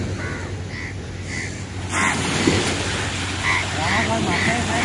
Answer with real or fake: real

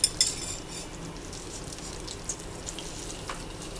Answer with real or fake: real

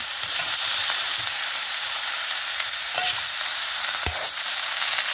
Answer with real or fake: fake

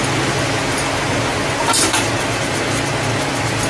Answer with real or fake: real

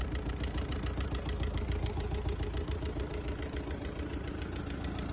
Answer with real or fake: fake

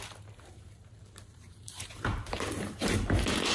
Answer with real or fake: fake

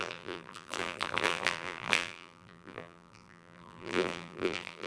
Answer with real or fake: fake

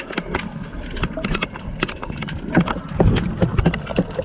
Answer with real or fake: real